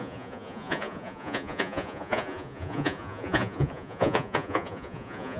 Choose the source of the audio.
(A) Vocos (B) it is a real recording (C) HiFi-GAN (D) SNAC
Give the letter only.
A